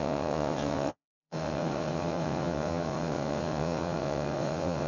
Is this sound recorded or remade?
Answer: remade